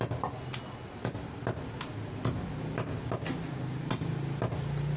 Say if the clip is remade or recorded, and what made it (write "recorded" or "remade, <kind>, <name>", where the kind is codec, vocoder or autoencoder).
recorded